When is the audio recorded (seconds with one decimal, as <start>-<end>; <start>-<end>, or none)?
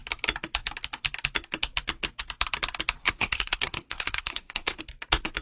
0.0-3.0; 4.8-5.4